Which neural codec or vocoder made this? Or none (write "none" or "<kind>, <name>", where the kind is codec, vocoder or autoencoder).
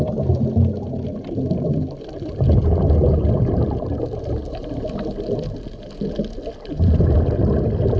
none